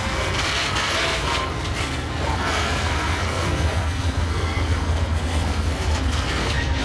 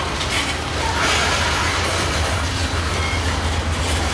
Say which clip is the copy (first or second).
first